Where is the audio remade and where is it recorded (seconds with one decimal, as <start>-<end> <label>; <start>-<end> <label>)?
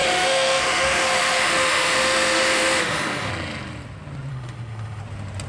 0.0-3.3 remade; 3.3-4.3 recorded; 4.3-5.0 remade; 5.0-5.5 recorded